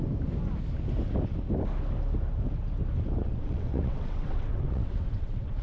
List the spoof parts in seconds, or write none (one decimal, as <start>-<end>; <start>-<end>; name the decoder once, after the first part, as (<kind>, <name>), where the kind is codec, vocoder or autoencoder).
3.2-5.6 (vocoder, WaveNeXt)